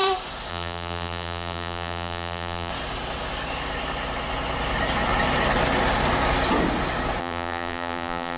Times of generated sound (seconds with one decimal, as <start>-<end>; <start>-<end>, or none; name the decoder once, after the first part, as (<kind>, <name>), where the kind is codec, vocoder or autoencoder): 0.5-2.7 (vocoder, BigVGAN v2); 7.2-8.4